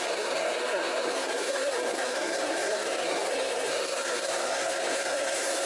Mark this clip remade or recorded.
remade